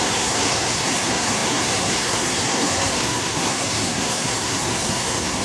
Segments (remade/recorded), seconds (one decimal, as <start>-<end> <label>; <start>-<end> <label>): 0.0-5.4 remade